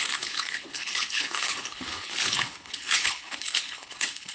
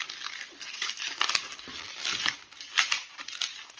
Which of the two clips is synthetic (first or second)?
first